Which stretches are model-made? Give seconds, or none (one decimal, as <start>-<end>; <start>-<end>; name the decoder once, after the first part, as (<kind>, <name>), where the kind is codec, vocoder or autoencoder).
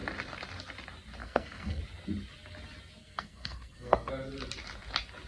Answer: 1.2-1.8 (codec, SNAC); 3.0-4.1